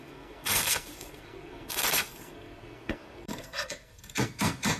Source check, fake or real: fake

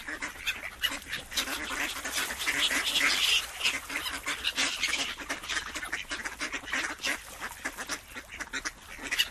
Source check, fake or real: real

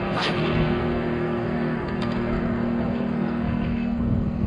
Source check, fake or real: fake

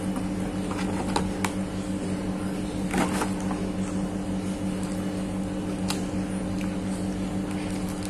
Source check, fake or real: real